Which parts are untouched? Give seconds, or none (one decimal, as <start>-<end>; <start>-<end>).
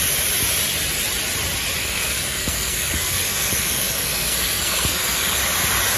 0.0-1.8; 5.4-6.0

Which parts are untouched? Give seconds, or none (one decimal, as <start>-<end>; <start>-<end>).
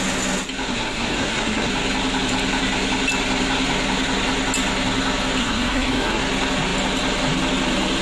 0.0-0.7; 1.7-5.4; 6.2-8.0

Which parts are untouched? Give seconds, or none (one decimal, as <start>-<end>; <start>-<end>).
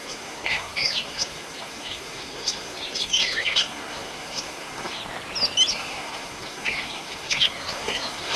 5.0-5.7